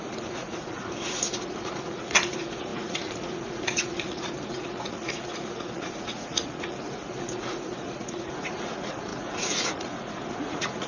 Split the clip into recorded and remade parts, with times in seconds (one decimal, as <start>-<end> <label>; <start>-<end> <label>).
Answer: 0.0-10.9 remade